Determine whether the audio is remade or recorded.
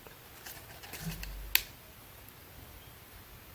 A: recorded